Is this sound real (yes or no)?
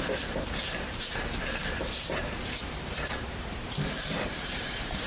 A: no